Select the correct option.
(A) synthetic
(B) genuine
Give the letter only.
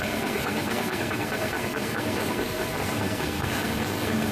A